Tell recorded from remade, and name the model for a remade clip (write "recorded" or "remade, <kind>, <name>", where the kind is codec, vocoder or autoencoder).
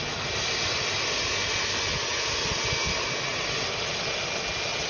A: recorded